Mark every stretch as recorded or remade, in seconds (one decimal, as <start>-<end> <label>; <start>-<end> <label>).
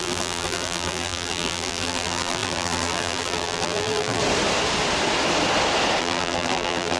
0.0-4.2 remade; 4.2-6.0 recorded; 6.0-7.0 remade